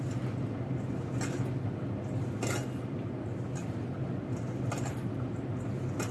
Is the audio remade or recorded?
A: recorded